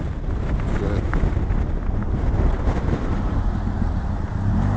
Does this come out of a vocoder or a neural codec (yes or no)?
no